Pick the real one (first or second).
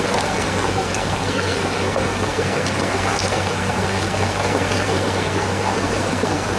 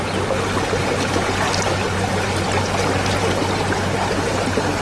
second